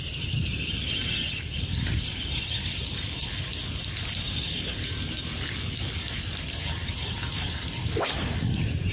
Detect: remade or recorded recorded